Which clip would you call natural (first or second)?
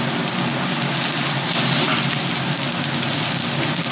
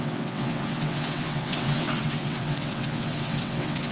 first